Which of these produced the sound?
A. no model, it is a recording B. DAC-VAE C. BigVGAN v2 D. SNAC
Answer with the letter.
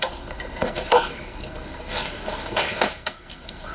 D